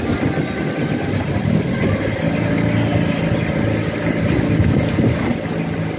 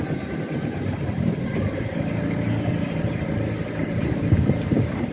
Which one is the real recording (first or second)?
first